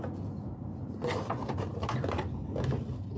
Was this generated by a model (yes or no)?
no